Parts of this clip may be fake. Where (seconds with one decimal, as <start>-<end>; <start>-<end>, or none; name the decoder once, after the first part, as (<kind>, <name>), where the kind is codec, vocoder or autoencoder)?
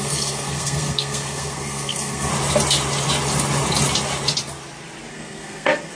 0.0-2.3 (codec, SNAC); 5.1-6.0